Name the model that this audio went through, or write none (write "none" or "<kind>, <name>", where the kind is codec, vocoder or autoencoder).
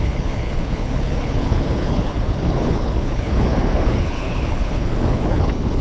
codec, HILCodec